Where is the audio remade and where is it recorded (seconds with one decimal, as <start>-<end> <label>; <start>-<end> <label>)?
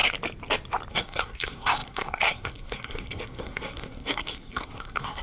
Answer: 0.0-0.9 recorded; 0.9-5.2 remade